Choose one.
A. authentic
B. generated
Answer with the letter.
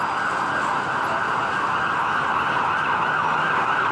A